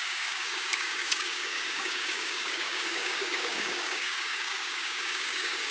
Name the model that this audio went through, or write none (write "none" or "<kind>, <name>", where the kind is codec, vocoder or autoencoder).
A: codec, DAC